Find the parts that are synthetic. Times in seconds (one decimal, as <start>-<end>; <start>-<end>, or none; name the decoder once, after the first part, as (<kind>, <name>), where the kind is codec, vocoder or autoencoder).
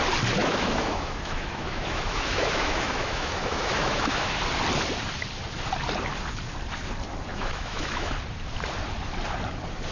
0.4-4.4 (autoencoder, DAC-VAE); 7.3-8.1